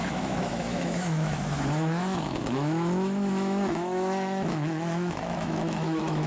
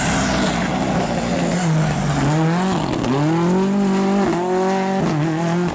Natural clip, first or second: second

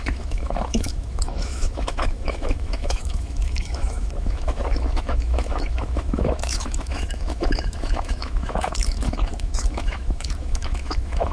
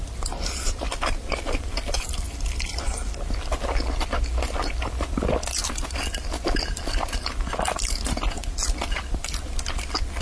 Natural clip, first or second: second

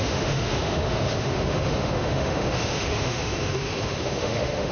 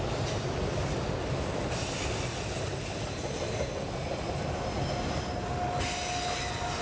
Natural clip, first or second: second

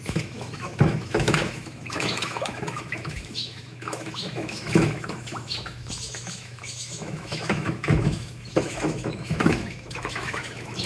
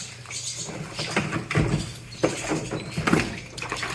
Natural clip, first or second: second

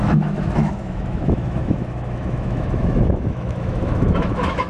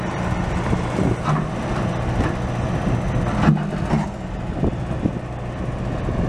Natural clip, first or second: second